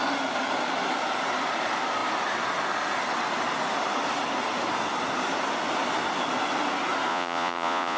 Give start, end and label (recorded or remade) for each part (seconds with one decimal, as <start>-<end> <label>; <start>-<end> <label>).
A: 0.0-7.1 recorded; 7.1-8.0 remade